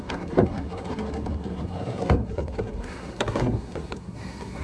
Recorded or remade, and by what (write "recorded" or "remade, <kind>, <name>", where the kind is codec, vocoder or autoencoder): remade, codec, SNAC